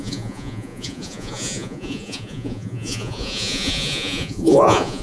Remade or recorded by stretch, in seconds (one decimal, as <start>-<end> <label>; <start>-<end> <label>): 0.0-5.0 remade